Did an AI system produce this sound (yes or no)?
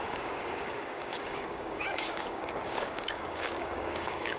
yes